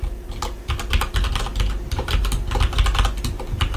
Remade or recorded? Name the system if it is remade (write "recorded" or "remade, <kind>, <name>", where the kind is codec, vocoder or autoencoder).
recorded